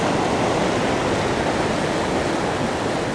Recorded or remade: recorded